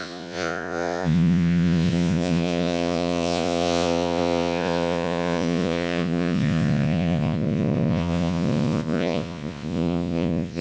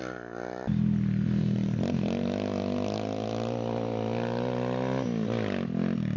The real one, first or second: second